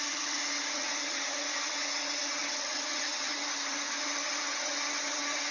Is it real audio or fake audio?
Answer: fake